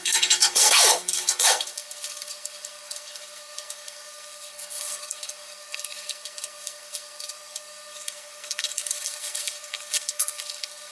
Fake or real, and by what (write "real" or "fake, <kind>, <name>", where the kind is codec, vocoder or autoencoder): fake, codec, SNAC